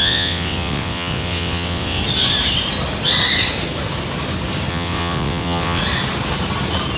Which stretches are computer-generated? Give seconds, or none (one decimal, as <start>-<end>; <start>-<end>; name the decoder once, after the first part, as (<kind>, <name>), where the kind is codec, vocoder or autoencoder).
0.0-2.0 (vocoder, WaveNeXt); 4.7-5.8